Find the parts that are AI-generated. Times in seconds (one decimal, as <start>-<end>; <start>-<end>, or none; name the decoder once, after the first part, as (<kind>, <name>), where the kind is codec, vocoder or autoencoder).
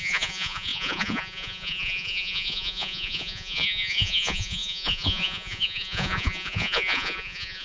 0.0-7.6 (vocoder, Vocos)